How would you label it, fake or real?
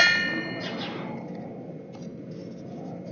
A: real